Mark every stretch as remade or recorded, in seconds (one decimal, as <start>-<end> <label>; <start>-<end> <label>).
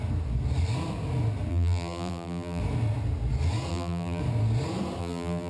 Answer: 0.0-1.5 recorded; 1.5-2.6 remade; 2.6-3.7 recorded; 3.7-4.2 remade; 4.2-5.0 recorded; 5.0-5.5 remade